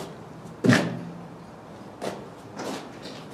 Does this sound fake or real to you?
real